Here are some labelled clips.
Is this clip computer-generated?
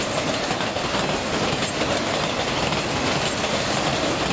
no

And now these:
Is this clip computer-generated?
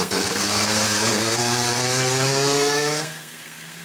yes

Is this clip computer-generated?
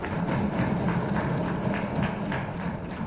no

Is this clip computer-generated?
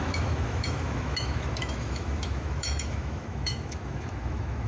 yes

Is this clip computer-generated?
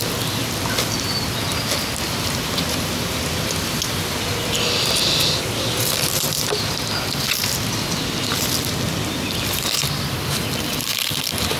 no